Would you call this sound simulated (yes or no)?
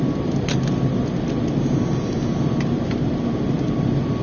no